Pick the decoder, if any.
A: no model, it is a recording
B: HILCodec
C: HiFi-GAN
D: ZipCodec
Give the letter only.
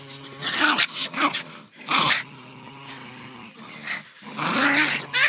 A